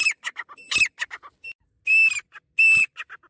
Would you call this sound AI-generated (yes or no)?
no